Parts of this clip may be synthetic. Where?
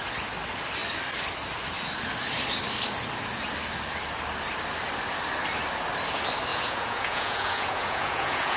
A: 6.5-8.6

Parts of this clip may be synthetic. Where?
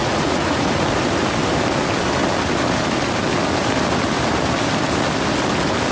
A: 0.0-0.7